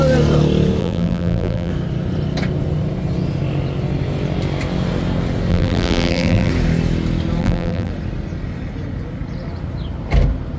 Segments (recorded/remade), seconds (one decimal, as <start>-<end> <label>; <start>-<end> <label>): 0.0-0.8 recorded; 0.8-1.7 remade; 1.7-5.5 recorded; 5.5-6.5 remade; 6.5-7.4 recorded; 7.4-7.9 remade; 7.9-10.6 recorded